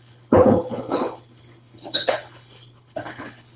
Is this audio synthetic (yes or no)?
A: yes